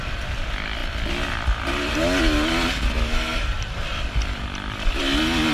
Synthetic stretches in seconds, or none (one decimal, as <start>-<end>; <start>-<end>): 3.9-5.0